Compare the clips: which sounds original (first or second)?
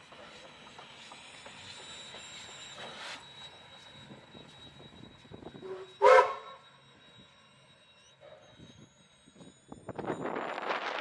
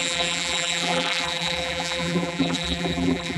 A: first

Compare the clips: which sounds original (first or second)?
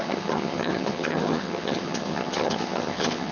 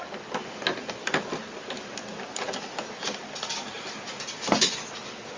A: second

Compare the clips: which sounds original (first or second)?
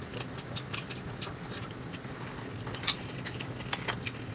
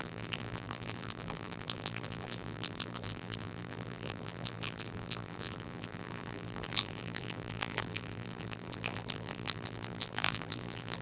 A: first